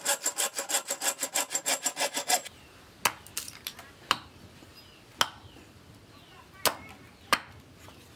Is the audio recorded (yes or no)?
yes